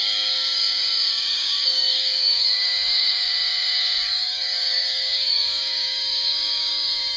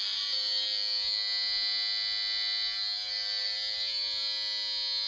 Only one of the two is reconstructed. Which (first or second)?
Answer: first